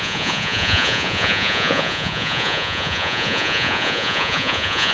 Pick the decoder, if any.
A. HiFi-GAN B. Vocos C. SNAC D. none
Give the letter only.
B